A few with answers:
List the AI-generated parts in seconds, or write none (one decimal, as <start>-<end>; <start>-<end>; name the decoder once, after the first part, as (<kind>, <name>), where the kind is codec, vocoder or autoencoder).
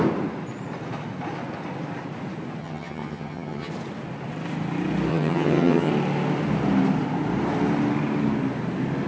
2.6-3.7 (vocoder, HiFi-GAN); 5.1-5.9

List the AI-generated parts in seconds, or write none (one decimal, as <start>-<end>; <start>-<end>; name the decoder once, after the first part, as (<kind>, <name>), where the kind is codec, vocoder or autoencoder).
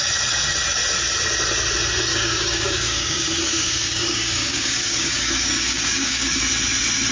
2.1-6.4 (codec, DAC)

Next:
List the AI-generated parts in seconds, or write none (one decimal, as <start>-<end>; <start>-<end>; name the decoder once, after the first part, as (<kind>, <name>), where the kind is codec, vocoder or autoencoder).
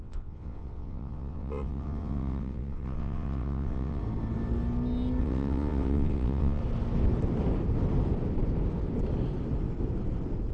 0.0-4.0 (vocoder, WaveNeXt); 5.2-6.6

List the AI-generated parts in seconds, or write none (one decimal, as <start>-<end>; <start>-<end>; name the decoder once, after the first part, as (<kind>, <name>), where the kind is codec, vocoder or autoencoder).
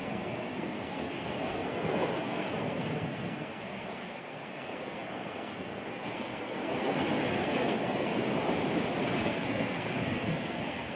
0.0-8.3 (codec, SNAC); 9.0-11.0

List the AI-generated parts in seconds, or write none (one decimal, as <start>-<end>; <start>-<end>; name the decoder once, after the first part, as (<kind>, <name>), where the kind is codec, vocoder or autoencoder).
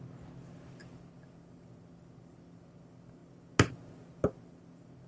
none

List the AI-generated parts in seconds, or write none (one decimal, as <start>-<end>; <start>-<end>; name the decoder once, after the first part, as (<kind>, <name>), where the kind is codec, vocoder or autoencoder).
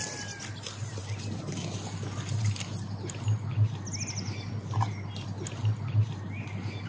none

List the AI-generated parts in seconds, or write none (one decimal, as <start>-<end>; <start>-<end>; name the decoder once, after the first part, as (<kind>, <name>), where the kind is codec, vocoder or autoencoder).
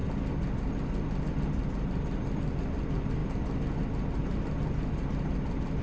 none